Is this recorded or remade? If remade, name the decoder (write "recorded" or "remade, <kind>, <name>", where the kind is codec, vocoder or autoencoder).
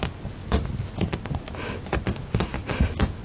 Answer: recorded